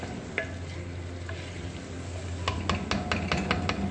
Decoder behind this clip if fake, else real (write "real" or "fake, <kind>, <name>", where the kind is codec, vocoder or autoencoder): real